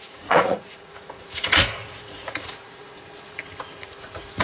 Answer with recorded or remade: remade